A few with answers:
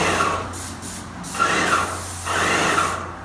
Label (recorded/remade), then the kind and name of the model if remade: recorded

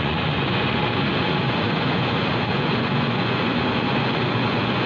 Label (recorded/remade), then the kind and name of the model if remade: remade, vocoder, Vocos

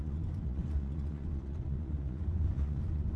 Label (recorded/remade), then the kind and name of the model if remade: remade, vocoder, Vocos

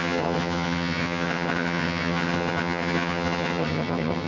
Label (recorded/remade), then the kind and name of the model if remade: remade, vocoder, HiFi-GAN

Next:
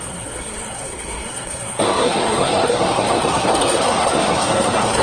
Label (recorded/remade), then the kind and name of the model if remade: remade, codec, SNAC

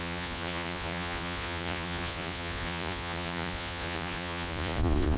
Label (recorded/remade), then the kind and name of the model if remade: remade, vocoder, Vocos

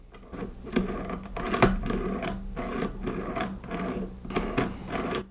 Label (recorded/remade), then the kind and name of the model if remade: recorded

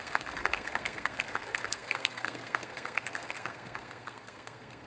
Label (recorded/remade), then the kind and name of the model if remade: remade, codec, SNAC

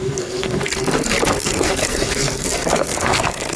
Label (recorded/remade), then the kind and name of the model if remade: remade, codec, SNAC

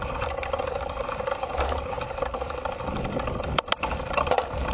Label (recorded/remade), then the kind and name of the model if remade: recorded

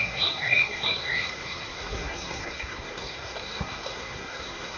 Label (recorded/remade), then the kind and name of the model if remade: remade, codec, SNAC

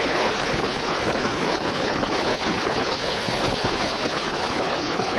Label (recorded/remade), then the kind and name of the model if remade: remade, codec, HILCodec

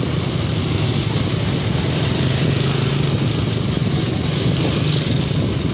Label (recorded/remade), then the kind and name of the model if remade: recorded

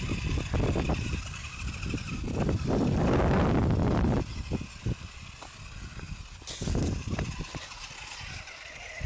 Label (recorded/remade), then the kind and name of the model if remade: recorded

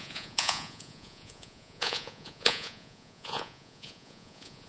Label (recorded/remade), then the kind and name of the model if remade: remade, vocoder, Vocos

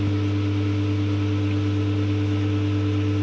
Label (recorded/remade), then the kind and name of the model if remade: recorded